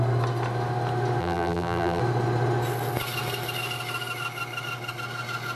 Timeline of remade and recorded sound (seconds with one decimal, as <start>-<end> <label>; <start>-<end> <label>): 0.0-1.2 recorded; 1.2-2.0 remade; 2.0-5.6 recorded